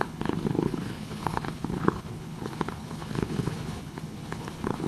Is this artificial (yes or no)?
yes